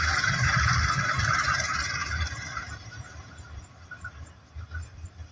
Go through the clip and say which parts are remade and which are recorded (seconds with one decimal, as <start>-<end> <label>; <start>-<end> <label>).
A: 0.0-5.3 remade